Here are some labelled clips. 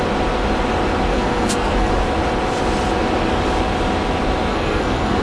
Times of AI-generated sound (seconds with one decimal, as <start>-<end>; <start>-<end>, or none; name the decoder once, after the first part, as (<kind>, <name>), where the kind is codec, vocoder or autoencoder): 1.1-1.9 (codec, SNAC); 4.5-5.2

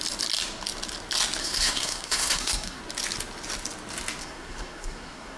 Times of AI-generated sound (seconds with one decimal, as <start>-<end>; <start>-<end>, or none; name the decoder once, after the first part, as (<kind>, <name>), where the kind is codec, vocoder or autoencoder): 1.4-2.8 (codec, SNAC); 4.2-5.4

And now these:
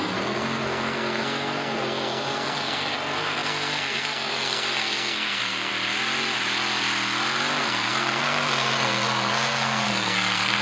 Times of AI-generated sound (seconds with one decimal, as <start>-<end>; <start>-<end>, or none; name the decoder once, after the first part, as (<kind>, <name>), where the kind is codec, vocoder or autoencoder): 0.0-5.7 (codec, SNAC); 7.6-10.6

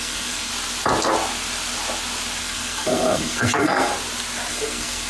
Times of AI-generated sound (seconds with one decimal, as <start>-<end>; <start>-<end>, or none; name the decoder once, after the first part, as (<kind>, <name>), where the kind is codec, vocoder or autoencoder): 0.0-0.5 (codec, SNAC); 2.4-3.9; 4.5-5.1

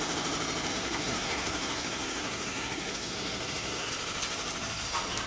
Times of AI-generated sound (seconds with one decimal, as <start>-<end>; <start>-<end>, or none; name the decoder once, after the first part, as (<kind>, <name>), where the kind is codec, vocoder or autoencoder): 0.7-3.9 (codec, SNAC)